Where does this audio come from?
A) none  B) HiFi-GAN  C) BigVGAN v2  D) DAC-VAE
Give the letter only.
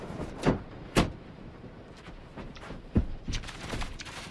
C